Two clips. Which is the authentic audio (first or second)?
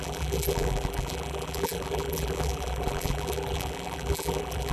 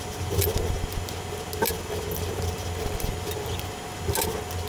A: second